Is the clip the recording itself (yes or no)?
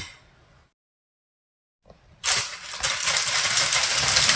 yes